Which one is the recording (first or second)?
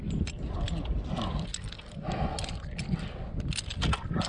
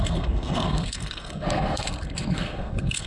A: first